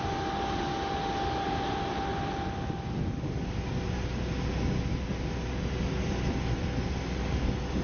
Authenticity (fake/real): real